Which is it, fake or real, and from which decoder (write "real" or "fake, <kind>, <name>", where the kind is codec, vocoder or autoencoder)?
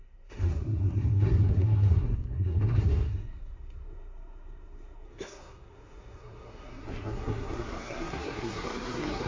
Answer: fake, codec, SNAC